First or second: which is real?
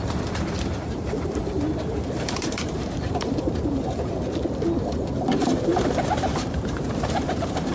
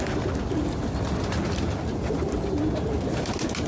second